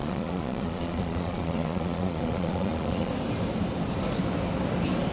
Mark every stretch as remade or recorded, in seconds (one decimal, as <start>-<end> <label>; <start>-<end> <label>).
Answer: 0.0-3.1 remade; 3.1-5.1 recorded